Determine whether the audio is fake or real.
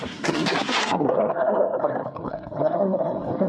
fake